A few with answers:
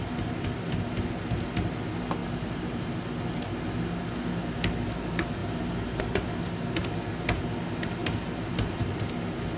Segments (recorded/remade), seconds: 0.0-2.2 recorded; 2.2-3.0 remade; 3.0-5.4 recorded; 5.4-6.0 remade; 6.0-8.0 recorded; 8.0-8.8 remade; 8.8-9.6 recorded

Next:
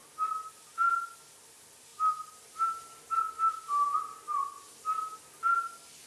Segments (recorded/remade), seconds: 0.0-1.3 recorded; 1.3-1.9 remade; 1.9-5.6 recorded; 5.6-6.1 remade